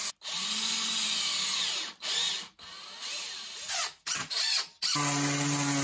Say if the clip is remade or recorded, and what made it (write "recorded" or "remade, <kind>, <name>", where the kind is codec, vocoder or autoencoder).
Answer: recorded